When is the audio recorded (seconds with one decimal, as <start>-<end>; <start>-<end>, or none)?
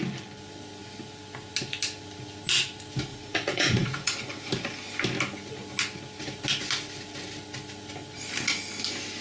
0.0-3.1; 4.5-9.2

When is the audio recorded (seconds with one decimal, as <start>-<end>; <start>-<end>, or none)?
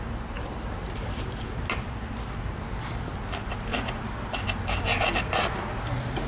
0.0-6.3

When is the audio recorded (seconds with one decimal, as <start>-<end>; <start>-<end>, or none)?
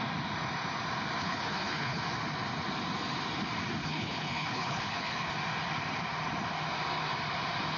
0.0-1.2; 2.0-3.8; 5.3-7.8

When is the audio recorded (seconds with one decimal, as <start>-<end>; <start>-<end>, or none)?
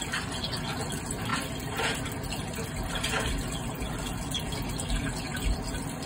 0.0-6.1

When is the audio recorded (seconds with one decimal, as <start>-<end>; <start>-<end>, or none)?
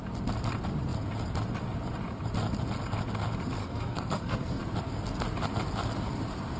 0.0-3.6; 4.6-6.6